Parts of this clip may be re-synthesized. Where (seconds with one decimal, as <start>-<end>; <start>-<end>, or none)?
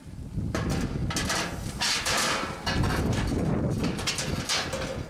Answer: none